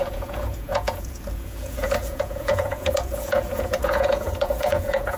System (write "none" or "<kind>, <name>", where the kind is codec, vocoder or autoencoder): vocoder, Vocos